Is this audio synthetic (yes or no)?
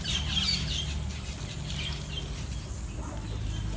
no